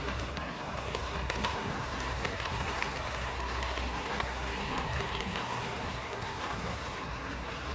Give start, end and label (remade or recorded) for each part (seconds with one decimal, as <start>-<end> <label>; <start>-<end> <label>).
0.0-7.7 remade